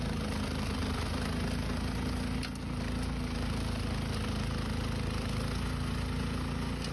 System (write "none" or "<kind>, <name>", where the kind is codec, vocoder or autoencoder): none